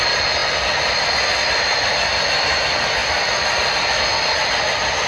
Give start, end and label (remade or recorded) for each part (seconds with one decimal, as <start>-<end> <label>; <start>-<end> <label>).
0.0-5.1 recorded